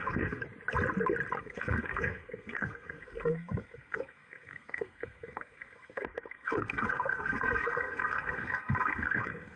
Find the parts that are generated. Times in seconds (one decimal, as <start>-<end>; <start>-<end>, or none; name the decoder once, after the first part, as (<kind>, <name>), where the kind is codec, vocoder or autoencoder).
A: 0.0-0.4 (codec, SNAC); 1.4-9.6